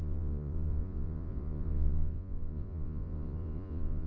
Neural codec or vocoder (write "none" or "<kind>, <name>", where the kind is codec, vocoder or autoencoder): vocoder, Vocos